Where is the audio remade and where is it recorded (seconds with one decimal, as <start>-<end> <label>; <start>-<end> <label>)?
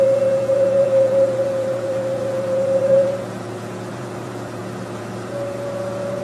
0.0-6.2 remade